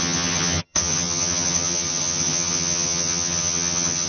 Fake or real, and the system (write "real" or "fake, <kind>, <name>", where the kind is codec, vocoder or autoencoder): fake, vocoder, HiFi-GAN